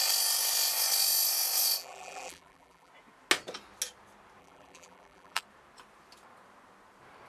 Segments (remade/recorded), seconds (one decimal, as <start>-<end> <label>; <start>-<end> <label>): 0.0-1.8 recorded; 1.8-2.9 remade; 2.9-4.4 recorded; 4.4-5.4 remade; 5.4-7.3 recorded